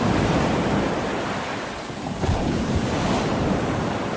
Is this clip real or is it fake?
fake